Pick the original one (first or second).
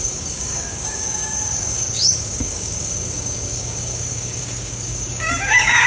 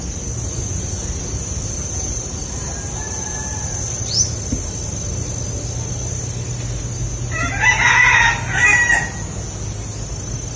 second